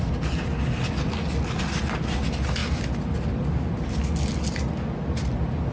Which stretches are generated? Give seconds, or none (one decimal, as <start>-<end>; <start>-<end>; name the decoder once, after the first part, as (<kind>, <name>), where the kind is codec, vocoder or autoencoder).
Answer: none